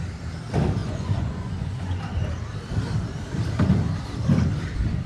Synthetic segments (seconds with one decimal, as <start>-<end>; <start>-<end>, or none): 0.8-2.0